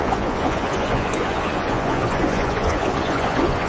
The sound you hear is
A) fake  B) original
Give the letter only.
A